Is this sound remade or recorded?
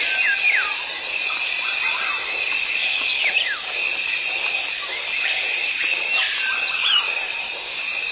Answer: remade